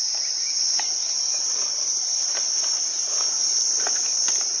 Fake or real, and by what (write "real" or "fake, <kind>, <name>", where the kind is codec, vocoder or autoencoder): real